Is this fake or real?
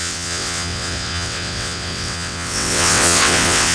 fake